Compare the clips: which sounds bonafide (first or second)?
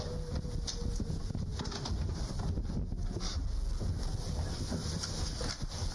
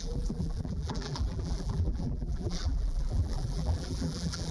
first